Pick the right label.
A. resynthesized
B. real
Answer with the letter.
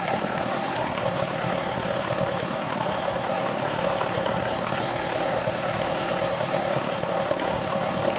A